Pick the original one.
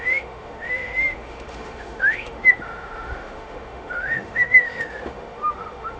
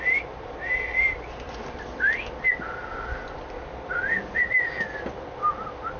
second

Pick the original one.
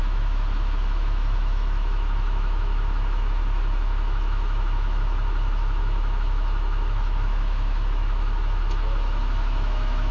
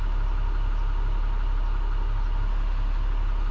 second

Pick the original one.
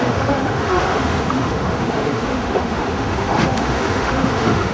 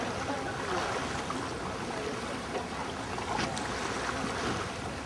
second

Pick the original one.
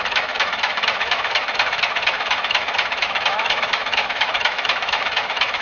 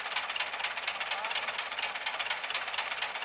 second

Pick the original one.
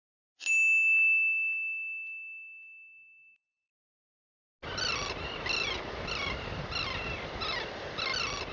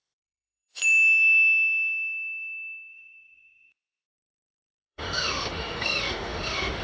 first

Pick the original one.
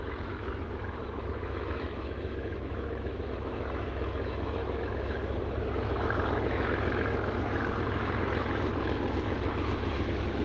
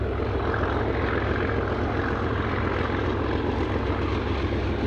second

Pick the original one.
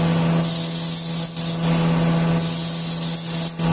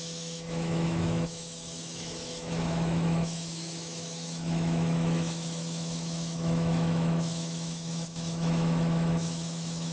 first